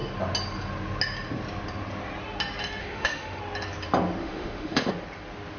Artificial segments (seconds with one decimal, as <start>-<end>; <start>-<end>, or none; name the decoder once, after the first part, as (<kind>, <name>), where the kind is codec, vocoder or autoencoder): 2.8-3.4 (autoencoder, DAC-VAE); 4.2-4.9